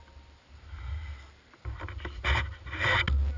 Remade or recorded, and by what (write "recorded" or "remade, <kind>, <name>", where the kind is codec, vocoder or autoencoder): recorded